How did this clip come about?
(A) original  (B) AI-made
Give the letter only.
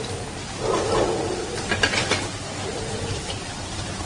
B